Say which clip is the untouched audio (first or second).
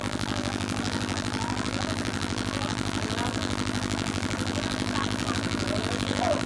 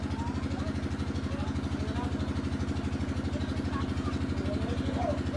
second